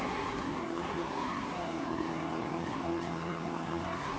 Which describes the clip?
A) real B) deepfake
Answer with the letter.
B